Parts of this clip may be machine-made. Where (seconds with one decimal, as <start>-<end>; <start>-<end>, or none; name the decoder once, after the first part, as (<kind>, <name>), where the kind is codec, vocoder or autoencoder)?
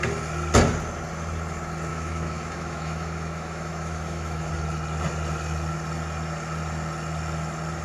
1.9-4.5 (autoencoder, DAC-VAE)